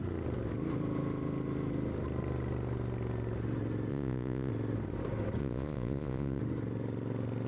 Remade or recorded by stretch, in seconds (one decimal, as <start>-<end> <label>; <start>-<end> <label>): 0.0-3.9 recorded; 3.9-4.5 remade; 4.5-5.4 recorded; 5.4-6.4 remade; 6.4-7.5 recorded

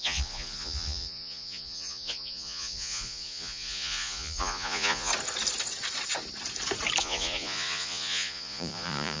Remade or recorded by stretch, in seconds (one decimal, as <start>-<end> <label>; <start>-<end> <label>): 0.0-5.1 remade; 5.1-7.0 recorded; 7.0-9.2 remade